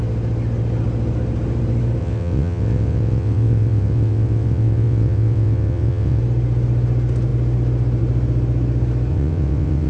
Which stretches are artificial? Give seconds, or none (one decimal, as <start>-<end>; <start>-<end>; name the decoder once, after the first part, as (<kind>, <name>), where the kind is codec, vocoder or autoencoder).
2.0-6.2 (vocoder, WaveNeXt); 9.1-9.9

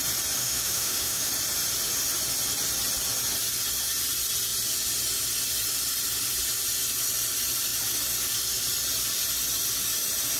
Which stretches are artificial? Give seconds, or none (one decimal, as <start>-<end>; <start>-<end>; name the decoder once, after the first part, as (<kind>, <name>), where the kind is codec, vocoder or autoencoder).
0.4-1.3 (autoencoder, DAC-VAE)

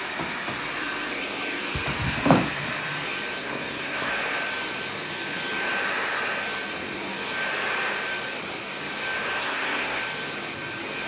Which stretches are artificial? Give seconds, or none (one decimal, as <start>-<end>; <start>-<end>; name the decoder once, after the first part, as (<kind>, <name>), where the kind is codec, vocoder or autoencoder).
3.4-4.1 (codec, SNAC); 9.4-10.0

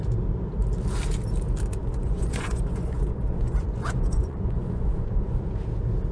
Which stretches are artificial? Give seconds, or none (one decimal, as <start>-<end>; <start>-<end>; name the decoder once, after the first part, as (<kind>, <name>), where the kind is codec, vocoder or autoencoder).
1.8-5.5 (vocoder, Vocos)